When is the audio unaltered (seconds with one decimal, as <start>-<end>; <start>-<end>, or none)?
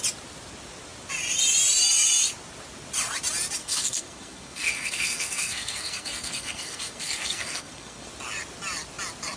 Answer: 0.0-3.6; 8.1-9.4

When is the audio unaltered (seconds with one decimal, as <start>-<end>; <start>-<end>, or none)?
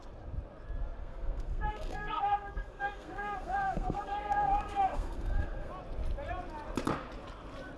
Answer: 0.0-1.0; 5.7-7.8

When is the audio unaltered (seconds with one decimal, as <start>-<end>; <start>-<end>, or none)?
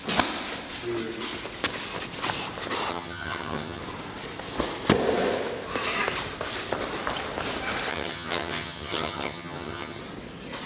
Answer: 0.0-2.9; 3.8-7.9; 10.0-10.7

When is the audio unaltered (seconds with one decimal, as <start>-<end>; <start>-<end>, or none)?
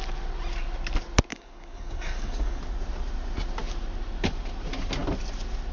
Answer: 0.0-1.3; 2.6-5.7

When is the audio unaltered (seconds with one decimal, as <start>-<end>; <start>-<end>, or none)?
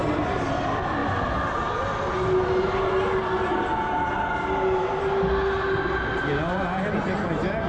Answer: 0.0-7.7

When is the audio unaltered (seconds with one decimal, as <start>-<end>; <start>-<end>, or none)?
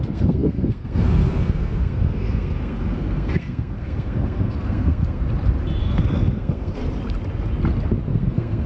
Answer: 5.2-5.8; 6.8-8.1